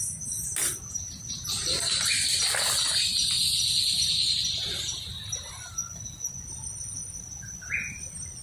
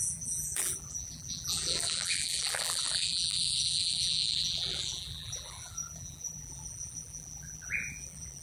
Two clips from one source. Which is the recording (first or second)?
first